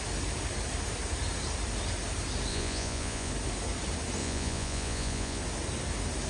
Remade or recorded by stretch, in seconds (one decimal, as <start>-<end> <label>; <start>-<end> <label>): 0.0-2.5 recorded; 2.5-3.3 remade; 3.3-4.2 recorded; 4.2-5.4 remade; 5.4-6.3 recorded